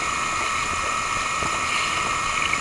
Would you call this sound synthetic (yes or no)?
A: no